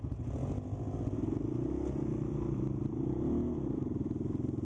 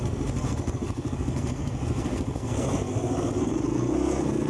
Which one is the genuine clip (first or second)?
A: first